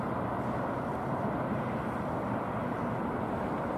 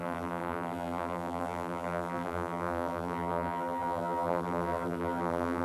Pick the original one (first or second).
first